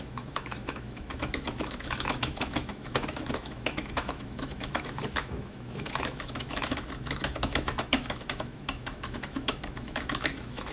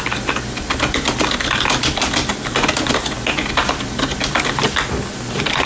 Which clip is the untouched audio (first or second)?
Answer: second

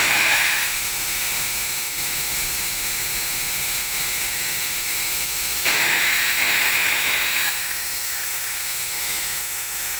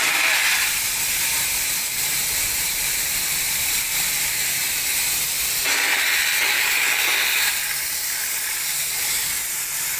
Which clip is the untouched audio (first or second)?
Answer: second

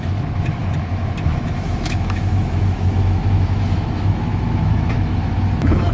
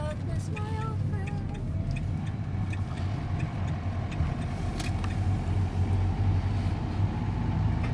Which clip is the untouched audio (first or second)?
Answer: second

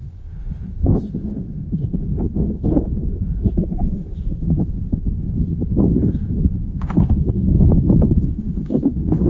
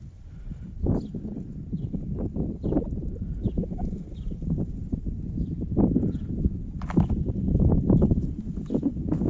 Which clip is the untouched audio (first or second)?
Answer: second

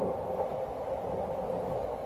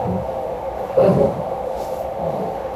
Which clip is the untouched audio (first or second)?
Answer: first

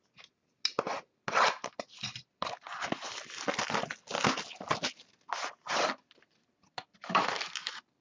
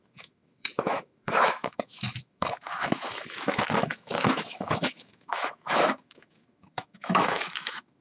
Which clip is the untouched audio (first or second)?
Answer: first